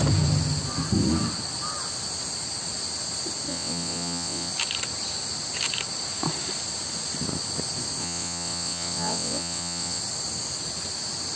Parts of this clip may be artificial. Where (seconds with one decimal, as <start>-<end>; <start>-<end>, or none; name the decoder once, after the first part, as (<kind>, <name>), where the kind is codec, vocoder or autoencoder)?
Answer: 3.5-4.5 (vocoder, WaveNeXt); 8.0-10.0